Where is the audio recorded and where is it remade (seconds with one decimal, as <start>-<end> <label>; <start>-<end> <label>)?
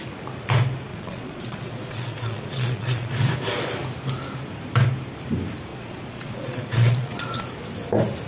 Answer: 0.0-0.9 recorded; 0.9-3.1 remade; 3.1-5.7 recorded; 5.7-7.5 remade; 7.5-8.3 recorded